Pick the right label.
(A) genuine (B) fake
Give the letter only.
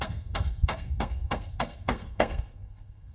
B